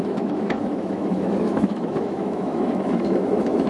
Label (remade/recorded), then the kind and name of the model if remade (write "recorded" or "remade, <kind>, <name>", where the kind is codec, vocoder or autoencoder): remade, autoencoder, DAC-VAE